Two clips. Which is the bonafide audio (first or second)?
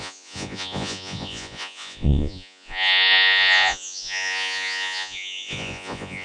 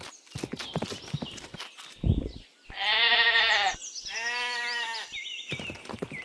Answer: second